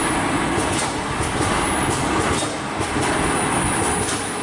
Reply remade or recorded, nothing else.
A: recorded